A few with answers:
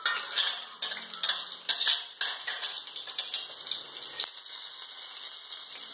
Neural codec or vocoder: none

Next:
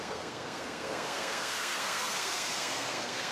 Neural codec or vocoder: codec, SNAC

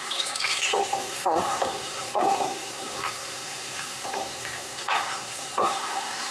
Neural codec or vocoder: codec, SNAC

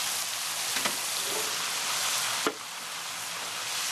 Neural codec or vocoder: none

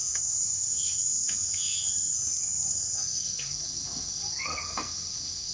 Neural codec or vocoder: codec, SNAC